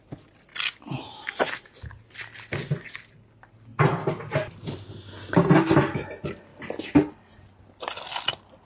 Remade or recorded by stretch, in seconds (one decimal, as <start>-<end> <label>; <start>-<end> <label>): 0.0-8.6 recorded